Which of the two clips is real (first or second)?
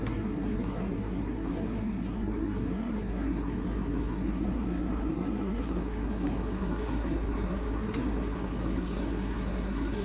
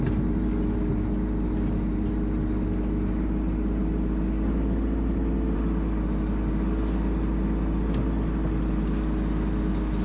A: second